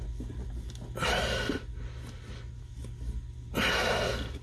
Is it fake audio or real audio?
real